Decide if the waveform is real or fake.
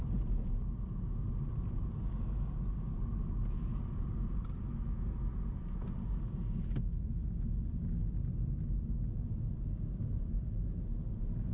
real